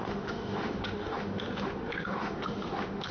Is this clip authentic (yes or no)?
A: no